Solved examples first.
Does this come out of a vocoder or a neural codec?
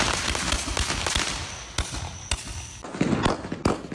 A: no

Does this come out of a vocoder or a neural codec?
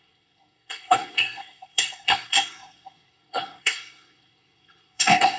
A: yes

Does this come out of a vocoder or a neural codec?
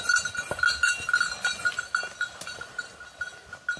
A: no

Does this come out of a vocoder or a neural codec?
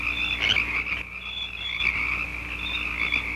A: no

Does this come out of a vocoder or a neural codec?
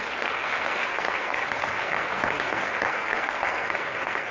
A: yes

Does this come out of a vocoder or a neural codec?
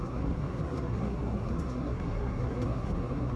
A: yes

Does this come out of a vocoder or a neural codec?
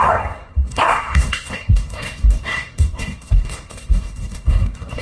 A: yes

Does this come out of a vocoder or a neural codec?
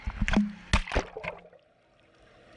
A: no